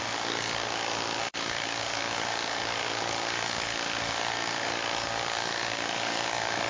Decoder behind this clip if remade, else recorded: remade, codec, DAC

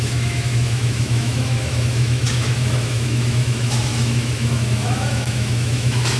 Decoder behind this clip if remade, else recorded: remade, autoencoder, DAC-VAE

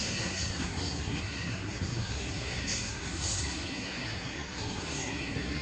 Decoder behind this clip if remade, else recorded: remade, codec, SNAC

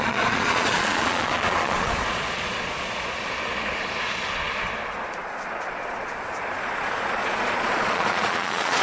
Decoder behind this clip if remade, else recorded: remade, vocoder, Vocos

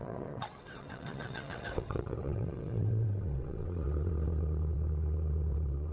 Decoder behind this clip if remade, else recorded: remade, vocoder, WaveNeXt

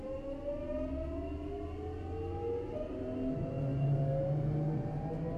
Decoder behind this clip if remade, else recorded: recorded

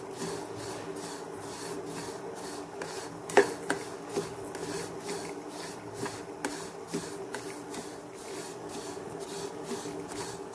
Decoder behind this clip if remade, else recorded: recorded